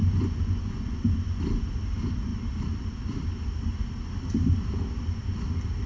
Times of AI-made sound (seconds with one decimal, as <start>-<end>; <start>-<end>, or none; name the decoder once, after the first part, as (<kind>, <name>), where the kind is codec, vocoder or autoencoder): 0.0-1.4 (vocoder, Vocos)